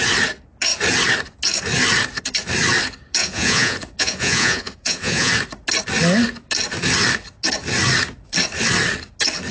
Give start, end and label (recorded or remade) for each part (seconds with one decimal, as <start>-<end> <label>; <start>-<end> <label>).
0.0-3.2 recorded; 3.2-5.3 remade; 5.3-9.5 recorded